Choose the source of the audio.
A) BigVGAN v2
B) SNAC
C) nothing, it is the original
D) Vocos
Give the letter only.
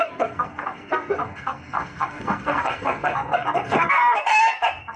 B